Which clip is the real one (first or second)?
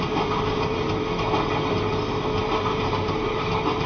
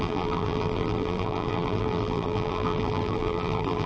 first